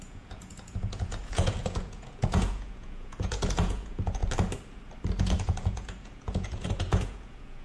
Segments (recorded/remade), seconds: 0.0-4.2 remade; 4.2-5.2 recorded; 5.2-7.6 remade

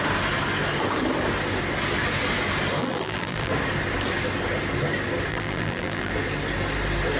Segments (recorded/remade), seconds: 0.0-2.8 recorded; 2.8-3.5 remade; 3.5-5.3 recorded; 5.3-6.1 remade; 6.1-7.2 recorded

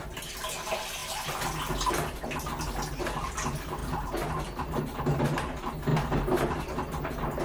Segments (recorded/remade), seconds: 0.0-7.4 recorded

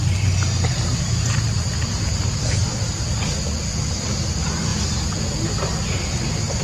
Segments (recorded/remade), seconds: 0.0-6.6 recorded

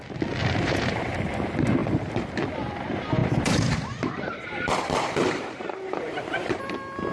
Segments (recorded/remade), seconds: 0.0-0.4 recorded; 0.4-1.0 remade; 1.0-1.8 recorded; 1.8-2.3 remade; 2.3-3.2 recorded; 3.2-6.6 remade; 6.6-7.1 recorded

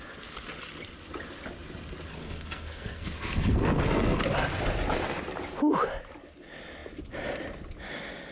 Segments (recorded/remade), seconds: 0.0-2.1 recorded; 2.1-4.2 remade; 4.2-8.3 recorded

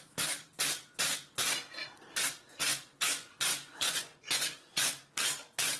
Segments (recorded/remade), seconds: 0.0-2.6 recorded; 2.6-5.1 remade; 5.1-5.8 recorded